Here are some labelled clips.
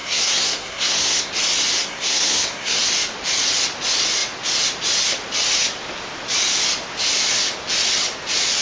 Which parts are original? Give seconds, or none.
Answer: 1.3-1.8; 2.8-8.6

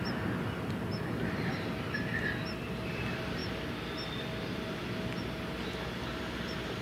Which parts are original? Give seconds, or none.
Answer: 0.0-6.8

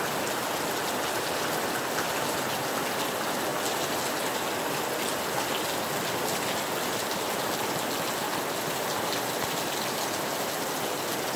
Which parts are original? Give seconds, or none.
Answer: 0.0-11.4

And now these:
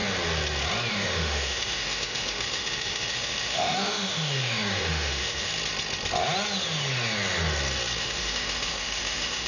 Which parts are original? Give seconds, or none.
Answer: 0.0-0.9; 5.5-8.0

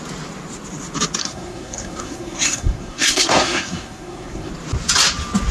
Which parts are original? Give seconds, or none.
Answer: 0.0-1.2; 4.5-5.5